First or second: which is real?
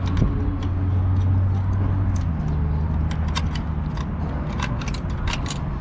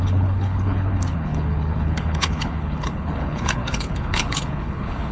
first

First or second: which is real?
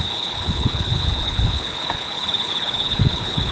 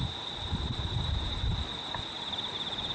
second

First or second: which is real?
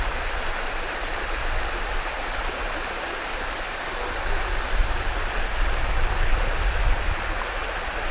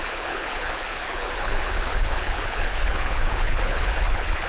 first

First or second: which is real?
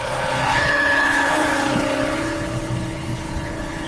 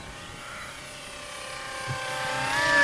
second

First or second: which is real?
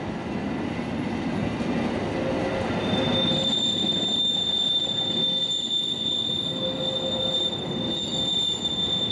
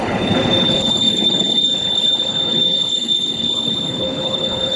first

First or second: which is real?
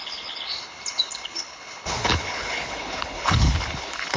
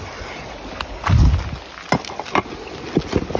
second